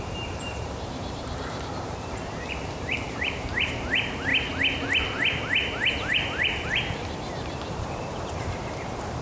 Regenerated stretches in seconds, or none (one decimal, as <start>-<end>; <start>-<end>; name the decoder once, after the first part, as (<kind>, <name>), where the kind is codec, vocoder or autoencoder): 0.0-4.3 (vocoder, BigVGAN v2); 5.9-9.2